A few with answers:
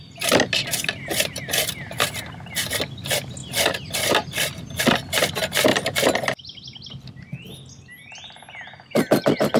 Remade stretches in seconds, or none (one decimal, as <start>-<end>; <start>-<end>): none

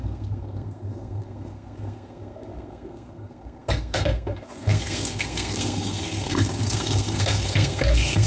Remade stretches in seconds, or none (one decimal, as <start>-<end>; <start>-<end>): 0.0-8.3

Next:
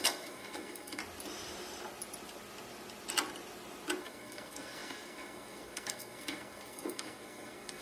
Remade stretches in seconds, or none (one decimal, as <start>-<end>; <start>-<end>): 0.0-1.0; 4.0-7.8

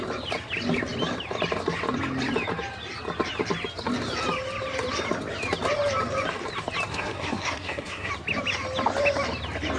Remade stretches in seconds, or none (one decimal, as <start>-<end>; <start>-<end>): 6.9-8.1

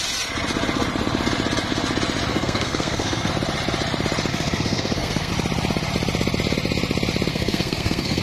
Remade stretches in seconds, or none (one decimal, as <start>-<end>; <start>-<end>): 2.3-3.3; 4.3-5.3; 7.3-8.2